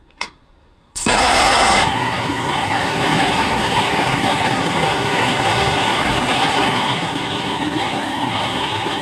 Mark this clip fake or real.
fake